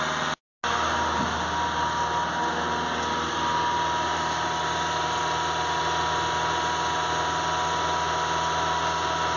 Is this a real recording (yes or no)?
yes